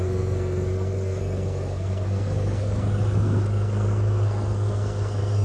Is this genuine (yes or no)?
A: no